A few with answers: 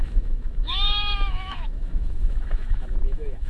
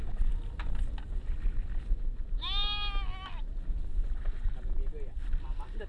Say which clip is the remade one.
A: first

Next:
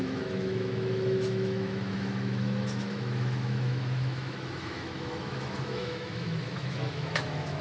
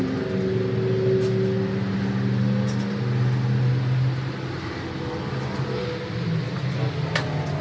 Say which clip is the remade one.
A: first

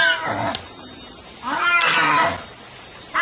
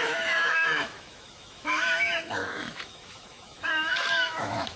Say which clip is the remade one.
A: second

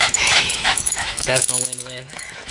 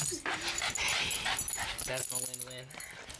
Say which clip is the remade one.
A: first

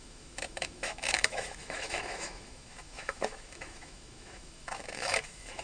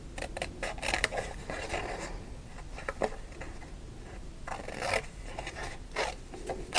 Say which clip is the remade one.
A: first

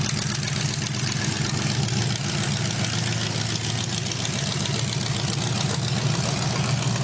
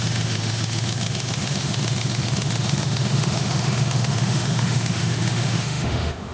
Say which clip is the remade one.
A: second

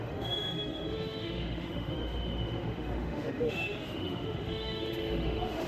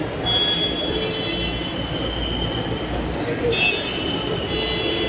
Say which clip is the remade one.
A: first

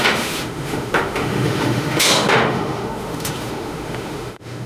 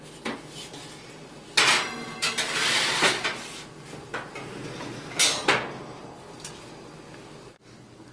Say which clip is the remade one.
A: first